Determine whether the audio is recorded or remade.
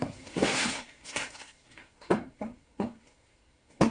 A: remade